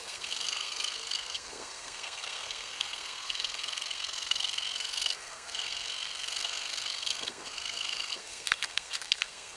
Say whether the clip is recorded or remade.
remade